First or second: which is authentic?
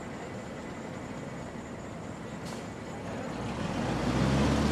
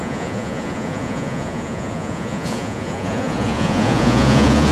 first